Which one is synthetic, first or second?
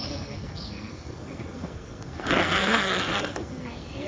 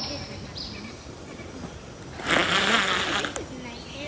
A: first